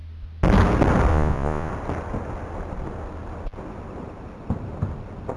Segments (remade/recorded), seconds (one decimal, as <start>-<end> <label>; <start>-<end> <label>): 0.0-1.1 recorded; 1.1-1.7 remade; 1.7-5.4 recorded

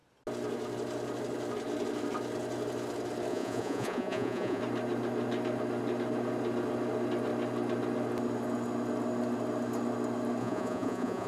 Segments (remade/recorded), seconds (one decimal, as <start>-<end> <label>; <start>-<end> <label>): 0.0-3.3 recorded; 3.3-4.6 remade; 4.6-10.4 recorded; 10.4-11.3 remade

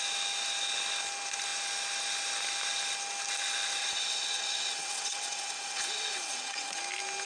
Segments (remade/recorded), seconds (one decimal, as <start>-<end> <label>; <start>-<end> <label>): 0.0-3.8 recorded; 3.8-6.8 remade; 6.8-7.3 recorded

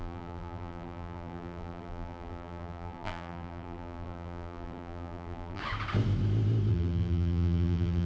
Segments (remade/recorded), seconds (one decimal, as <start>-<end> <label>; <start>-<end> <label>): 0.0-5.6 remade; 5.6-6.7 recorded; 6.7-8.1 remade